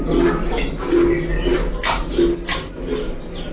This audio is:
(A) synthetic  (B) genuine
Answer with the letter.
B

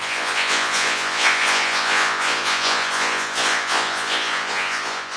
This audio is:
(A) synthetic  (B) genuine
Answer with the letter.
A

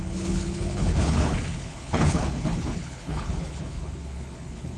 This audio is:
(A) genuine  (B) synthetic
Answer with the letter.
B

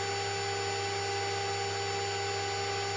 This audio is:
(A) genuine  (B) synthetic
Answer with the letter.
A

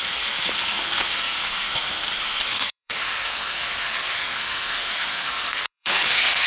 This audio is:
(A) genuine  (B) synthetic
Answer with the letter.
B